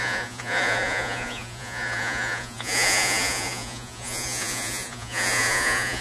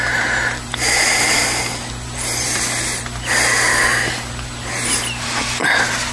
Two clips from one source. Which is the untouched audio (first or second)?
second